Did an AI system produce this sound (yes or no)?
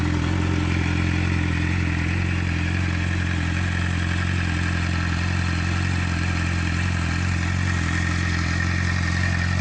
no